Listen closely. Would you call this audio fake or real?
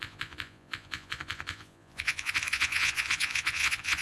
fake